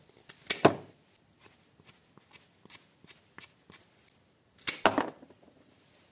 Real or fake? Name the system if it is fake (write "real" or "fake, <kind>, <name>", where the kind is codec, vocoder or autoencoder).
real